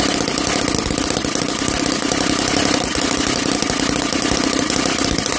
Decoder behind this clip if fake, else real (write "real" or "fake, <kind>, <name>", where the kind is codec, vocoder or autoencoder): real